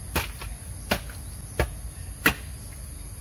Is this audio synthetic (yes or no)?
no